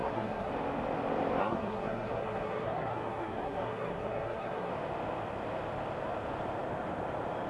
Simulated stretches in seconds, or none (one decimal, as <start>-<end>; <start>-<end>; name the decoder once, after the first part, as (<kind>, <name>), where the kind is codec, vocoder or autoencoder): 0.0-0.5 (codec, SNAC); 1.4-4.7